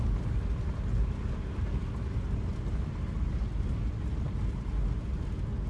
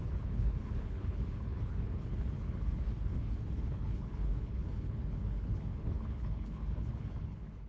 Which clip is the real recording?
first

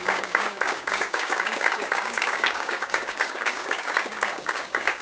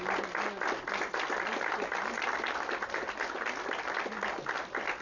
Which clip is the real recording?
second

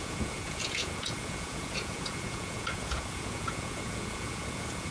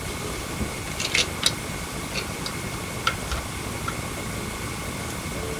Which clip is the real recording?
second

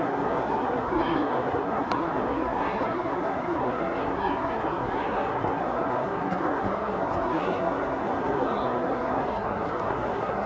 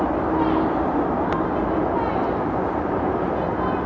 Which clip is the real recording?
second